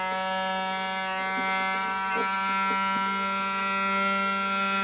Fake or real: real